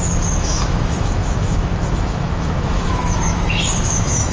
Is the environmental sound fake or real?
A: fake